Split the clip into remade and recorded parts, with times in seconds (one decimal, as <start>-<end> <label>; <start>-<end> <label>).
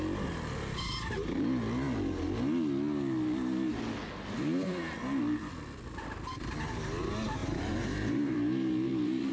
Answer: 0.0-7.4 recorded; 7.4-9.3 remade